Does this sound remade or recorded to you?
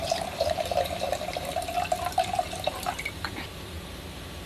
remade